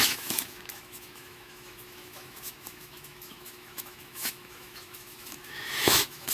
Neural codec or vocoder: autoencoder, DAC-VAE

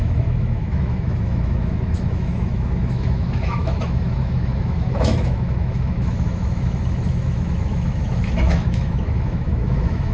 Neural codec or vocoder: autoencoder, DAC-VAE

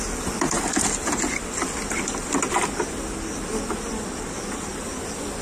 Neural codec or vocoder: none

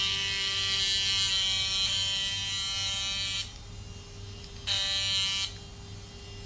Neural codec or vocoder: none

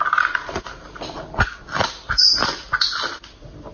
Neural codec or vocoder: none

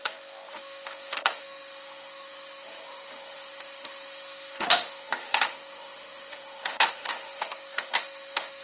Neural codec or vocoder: autoencoder, DAC-VAE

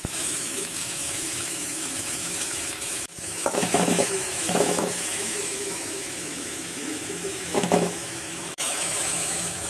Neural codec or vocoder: autoencoder, DAC-VAE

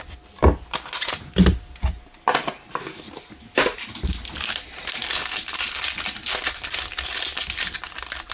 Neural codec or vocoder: none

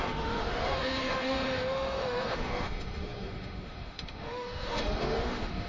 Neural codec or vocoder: autoencoder, DAC-VAE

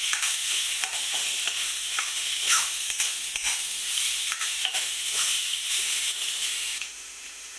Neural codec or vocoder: autoencoder, DAC-VAE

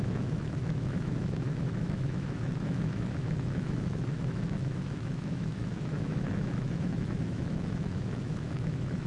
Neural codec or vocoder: autoencoder, DAC-VAE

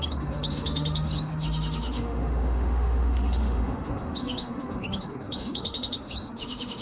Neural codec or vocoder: autoencoder, DAC-VAE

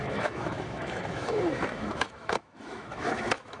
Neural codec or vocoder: autoencoder, DAC-VAE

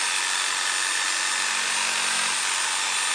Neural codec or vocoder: none